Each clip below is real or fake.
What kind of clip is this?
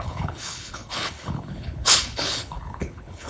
fake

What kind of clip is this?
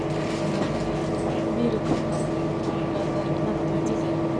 real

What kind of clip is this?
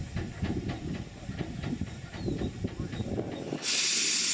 real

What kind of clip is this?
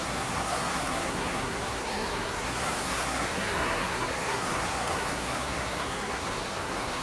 fake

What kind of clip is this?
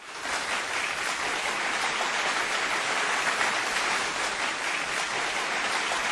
real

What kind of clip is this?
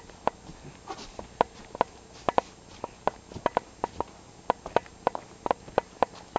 real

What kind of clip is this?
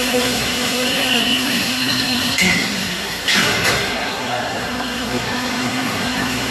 fake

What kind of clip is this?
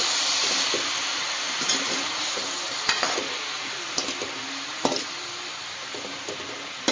real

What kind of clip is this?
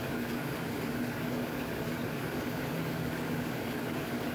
fake